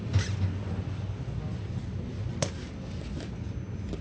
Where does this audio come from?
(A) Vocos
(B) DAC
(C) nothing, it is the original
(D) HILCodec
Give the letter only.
C